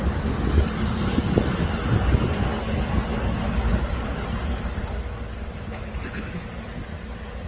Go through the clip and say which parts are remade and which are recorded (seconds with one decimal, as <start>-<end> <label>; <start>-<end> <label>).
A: 0.0-7.5 recorded